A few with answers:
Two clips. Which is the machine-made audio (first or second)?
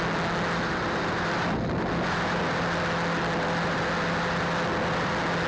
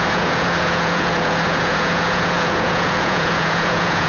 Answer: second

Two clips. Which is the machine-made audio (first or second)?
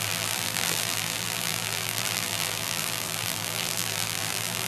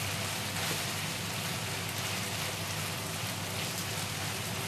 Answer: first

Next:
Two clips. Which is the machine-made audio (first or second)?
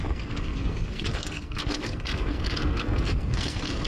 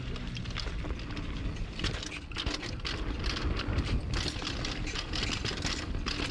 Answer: first